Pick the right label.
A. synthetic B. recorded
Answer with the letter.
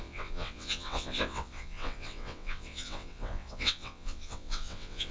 A